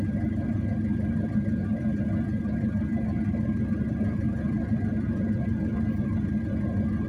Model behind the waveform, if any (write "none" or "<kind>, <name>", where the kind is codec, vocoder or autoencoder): none